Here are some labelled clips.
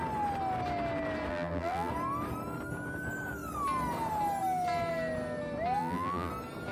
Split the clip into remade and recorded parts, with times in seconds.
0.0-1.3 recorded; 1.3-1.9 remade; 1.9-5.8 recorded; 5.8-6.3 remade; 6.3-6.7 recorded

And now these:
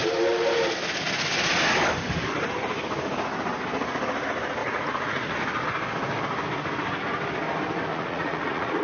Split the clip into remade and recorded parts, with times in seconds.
0.0-4.6 recorded; 4.6-5.4 remade; 5.4-7.9 recorded; 7.9-8.8 remade